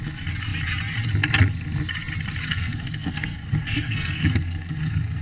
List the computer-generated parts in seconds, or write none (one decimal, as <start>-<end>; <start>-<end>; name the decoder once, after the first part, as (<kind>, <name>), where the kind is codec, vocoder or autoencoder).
2.5-5.2 (codec, SNAC)